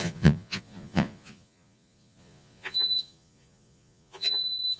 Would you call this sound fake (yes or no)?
yes